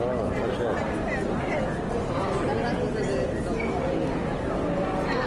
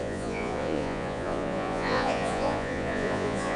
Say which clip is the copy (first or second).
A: second